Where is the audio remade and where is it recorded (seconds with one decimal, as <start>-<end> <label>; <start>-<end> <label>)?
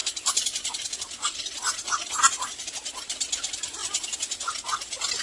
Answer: 0.0-2.1 remade; 2.1-5.2 recorded